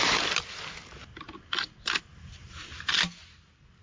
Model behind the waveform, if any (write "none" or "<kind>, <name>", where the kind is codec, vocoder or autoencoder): none